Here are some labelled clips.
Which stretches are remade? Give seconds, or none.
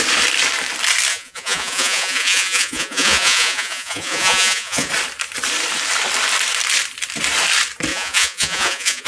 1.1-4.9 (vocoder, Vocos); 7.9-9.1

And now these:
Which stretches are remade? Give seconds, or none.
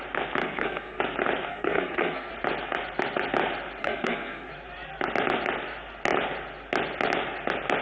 0.4-1.0 (codec, SNAC); 1.5-2.3; 3.8-4.5